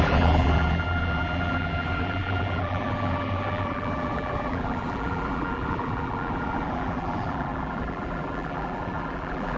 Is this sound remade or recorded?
remade